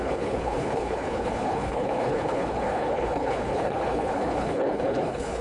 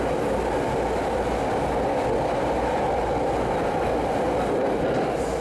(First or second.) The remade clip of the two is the first